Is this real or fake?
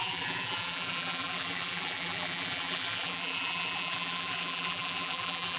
fake